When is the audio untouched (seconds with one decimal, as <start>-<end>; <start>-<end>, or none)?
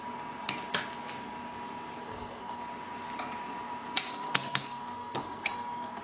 0.0-2.0; 2.6-4.1